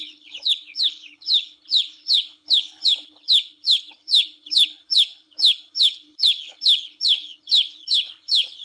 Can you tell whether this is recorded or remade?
remade